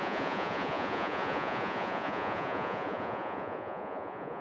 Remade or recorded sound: remade